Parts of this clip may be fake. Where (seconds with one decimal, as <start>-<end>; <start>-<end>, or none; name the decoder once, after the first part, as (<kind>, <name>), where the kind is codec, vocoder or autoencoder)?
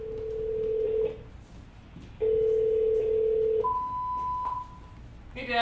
none